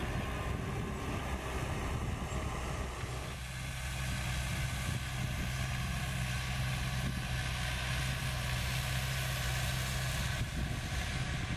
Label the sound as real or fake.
real